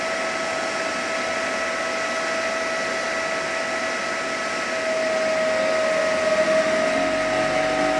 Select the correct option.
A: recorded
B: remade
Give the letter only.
A